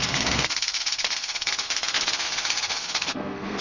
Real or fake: fake